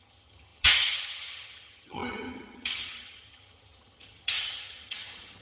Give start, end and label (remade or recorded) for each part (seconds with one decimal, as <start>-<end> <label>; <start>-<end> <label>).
0.0-5.4 remade